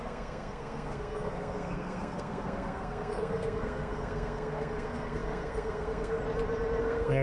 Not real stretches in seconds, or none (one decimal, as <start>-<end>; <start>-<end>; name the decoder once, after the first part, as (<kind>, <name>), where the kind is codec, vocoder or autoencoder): 0.0-6.2 (codec, SNAC); 6.8-7.2